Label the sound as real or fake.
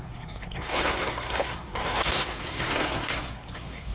fake